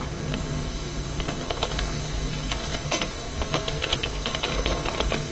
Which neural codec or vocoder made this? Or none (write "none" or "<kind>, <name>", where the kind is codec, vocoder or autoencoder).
codec, SNAC